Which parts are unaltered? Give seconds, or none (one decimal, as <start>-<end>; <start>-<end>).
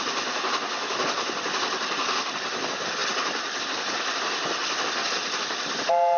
0.0-6.2